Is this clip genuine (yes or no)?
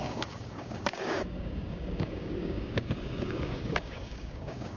no